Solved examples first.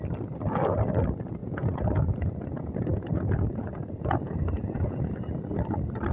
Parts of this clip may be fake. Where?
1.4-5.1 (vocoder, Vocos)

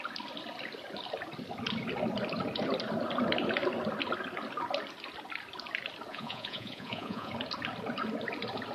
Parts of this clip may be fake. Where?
6.1-7.3 (vocoder, Vocos)

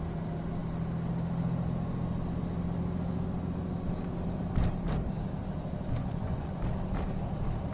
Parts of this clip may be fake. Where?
6.0-6.6 (vocoder, Vocos)

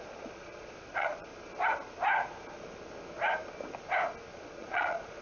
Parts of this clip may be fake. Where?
0.0-1.3 (vocoder, Vocos); 4.4-5.2

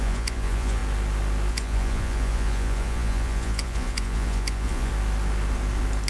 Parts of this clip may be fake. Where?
0.0-0.8 (vocoder, Vocos); 1.5-4.9

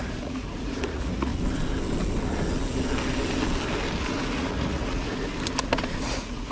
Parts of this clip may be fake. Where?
0.0-1.3 (vocoder, Vocos); 4.0-5.3; 6.0-6.5